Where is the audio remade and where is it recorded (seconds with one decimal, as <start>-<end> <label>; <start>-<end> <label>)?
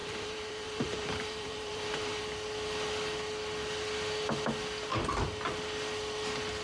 0.0-2.2 remade; 2.2-6.6 recorded